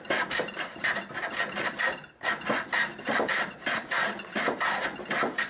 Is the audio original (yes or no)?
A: yes